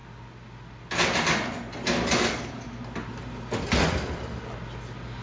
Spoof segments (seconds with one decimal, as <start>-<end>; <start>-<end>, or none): none